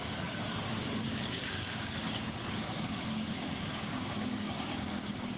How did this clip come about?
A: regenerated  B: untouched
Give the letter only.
A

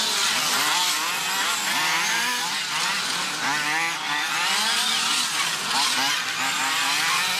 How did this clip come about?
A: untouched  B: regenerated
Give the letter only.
A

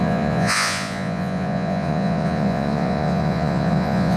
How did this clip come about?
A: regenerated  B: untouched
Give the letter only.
A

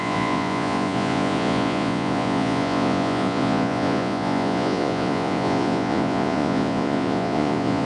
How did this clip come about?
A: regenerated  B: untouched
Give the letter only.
A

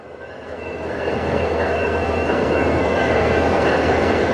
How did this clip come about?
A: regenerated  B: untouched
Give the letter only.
A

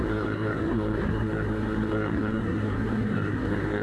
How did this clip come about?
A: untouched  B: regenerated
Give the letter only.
B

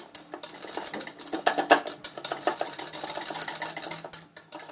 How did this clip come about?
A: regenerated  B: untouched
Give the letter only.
B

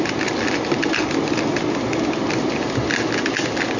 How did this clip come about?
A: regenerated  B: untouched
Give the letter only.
B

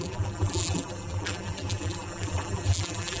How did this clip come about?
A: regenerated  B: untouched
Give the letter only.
A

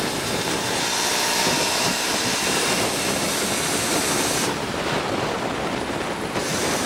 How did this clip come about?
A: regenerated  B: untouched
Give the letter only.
A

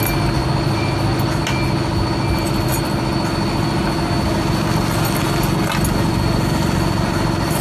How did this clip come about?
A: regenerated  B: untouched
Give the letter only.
B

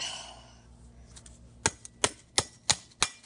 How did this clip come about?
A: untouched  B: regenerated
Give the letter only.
A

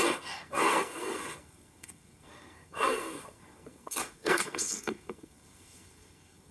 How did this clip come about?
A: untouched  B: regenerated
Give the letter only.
B